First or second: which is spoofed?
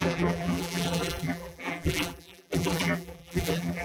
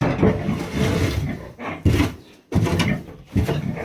first